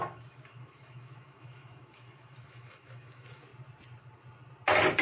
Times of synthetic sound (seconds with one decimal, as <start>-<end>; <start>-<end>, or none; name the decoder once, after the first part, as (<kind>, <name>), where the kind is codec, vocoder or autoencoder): 0.0-3.5 (autoencoder, DAC-VAE)